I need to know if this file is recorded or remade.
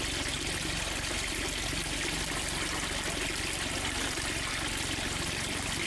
recorded